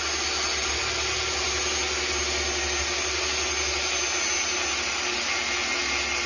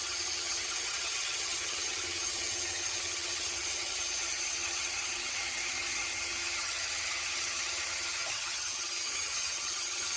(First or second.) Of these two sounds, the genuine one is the first